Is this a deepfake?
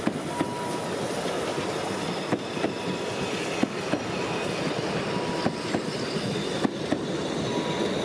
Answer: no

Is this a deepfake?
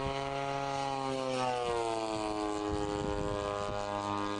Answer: no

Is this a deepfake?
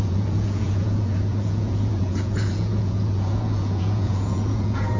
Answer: yes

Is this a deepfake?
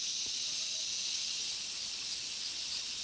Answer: no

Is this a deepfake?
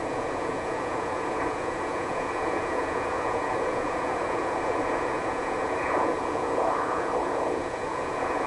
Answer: yes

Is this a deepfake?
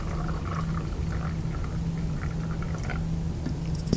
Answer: no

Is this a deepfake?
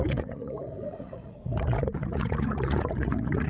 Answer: yes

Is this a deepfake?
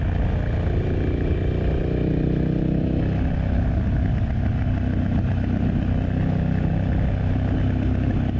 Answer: no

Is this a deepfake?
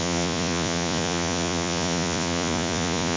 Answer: yes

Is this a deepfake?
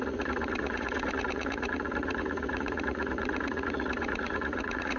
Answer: yes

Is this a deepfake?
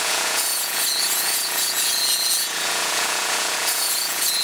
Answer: yes